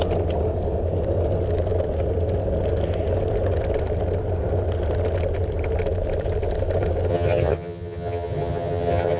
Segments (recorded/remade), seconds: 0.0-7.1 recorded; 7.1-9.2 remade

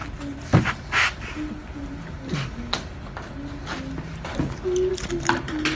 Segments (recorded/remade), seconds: 0.0-5.7 recorded

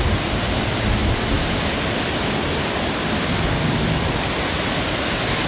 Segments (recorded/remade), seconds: 0.0-5.5 recorded

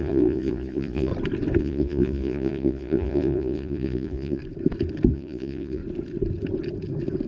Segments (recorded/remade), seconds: 0.0-1.1 remade; 1.1-1.6 recorded; 1.6-4.4 remade; 4.4-5.1 recorded; 5.1-5.8 remade; 5.8-7.3 recorded